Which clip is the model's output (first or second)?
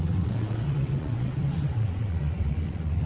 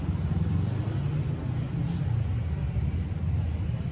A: first